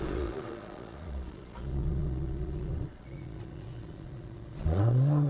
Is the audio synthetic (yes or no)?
yes